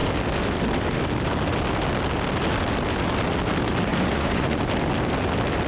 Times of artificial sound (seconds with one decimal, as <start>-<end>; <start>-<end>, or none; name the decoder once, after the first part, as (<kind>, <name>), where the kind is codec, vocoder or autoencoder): 3.9-4.6 (vocoder, Vocos)

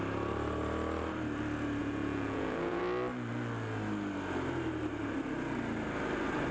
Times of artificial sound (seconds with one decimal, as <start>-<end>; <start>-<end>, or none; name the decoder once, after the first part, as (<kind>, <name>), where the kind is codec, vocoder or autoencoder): 1.8-2.8 (vocoder, Vocos)